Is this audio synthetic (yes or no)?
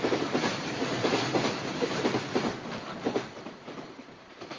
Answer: yes